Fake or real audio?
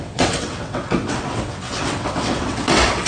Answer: fake